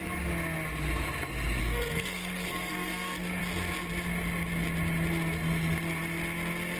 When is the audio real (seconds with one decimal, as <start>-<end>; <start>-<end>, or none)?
0.0-1.6; 3.4-6.8